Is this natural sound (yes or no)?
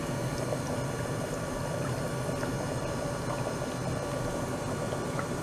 no